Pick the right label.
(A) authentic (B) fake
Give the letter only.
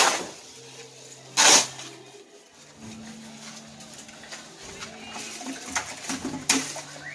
A